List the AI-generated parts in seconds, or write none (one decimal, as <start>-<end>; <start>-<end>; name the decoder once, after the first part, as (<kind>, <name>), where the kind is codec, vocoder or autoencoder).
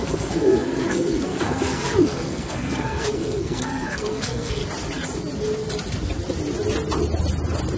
0.0-4.6 (codec, SNAC)